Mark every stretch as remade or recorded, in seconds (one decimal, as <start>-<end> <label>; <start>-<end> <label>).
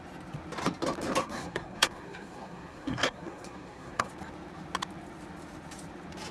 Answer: 0.0-1.2 recorded; 1.2-4.1 remade; 4.1-6.3 recorded